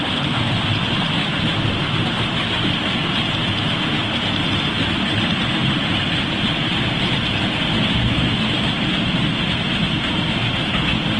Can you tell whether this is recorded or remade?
recorded